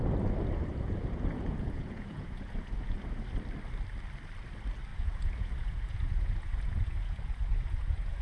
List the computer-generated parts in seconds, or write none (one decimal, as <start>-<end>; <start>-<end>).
0.7-3.2; 4.9-8.2